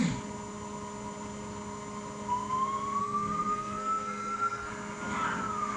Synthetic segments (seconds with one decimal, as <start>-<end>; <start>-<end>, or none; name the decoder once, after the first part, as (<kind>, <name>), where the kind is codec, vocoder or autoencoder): 3.0-4.7 (codec, SNAC)